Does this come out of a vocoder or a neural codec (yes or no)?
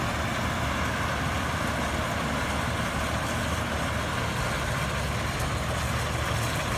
no